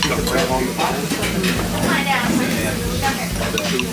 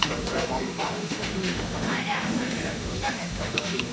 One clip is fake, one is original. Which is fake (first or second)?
second